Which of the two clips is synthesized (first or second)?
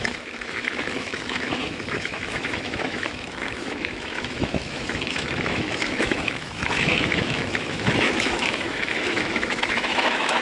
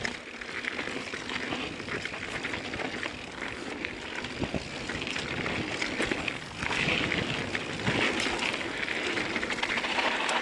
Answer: first